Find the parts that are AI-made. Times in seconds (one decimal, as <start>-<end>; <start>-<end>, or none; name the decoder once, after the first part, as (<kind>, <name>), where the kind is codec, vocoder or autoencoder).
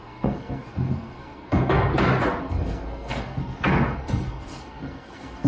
0.0-1.9 (codec, SNAC); 2.4-5.5